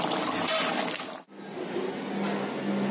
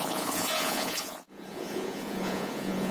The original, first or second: first